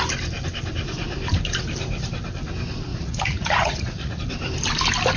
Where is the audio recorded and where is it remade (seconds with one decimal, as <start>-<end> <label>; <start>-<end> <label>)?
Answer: 0.0-2.9 recorded; 2.9-4.2 remade; 4.2-5.2 recorded